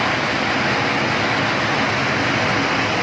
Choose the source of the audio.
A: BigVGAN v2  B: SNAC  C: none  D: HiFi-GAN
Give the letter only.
C